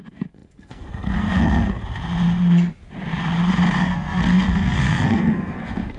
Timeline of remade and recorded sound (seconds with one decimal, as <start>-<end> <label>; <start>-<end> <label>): 0.0-1.8 remade; 1.8-3.8 recorded; 3.8-6.0 remade